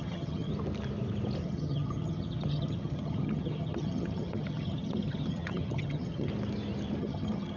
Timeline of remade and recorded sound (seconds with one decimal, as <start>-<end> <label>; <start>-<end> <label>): 0.0-0.5 remade; 0.5-1.4 recorded; 1.4-6.3 remade; 6.3-7.0 recorded; 7.0-7.6 remade